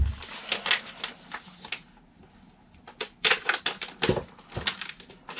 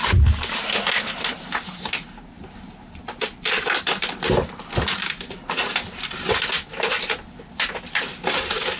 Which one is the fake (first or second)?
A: second